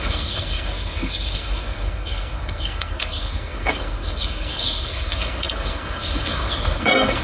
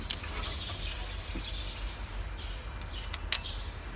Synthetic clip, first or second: first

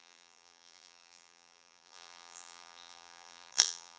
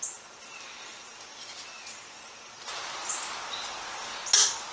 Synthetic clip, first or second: first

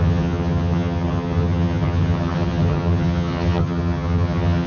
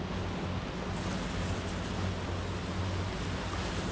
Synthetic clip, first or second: first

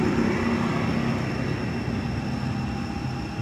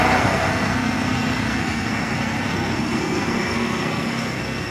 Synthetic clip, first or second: second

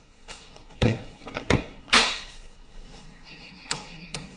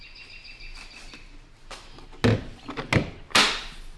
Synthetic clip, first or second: first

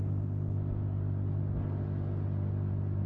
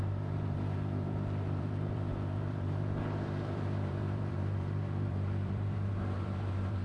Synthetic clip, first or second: second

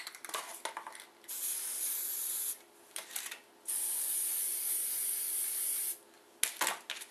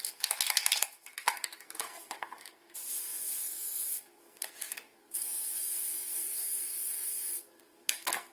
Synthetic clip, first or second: second